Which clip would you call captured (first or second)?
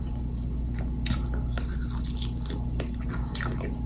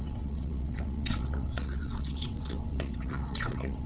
first